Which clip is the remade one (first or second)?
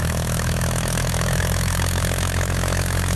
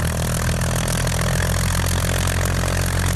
first